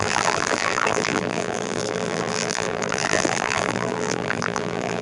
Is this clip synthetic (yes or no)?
yes